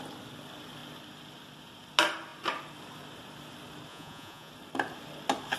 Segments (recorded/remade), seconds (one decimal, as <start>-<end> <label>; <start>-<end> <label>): 0.0-3.9 recorded; 3.9-4.5 remade; 4.5-5.6 recorded

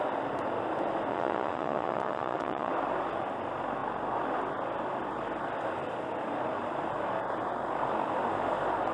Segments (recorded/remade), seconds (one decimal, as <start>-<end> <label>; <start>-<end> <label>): 0.0-1.1 recorded; 1.1-2.7 remade; 2.7-8.9 recorded

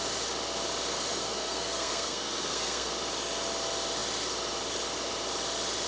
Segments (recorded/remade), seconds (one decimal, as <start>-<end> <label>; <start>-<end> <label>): 0.0-0.9 recorded; 0.9-2.9 remade; 2.9-5.9 recorded

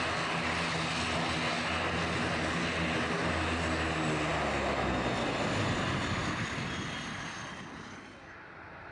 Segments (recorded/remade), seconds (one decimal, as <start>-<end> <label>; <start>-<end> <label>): 0.0-8.9 recorded

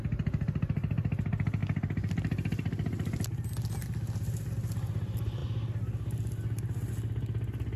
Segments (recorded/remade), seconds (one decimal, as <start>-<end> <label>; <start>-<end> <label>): 0.0-7.8 recorded